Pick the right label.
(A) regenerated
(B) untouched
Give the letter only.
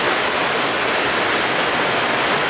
B